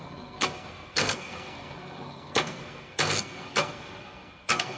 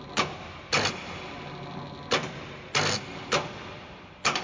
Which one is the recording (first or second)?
second